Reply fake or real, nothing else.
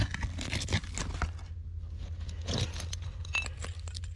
real